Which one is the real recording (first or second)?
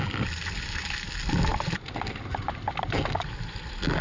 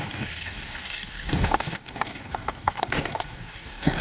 first